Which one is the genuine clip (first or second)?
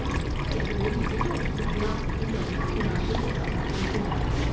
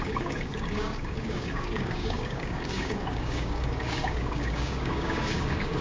first